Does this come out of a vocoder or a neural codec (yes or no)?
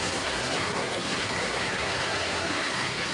yes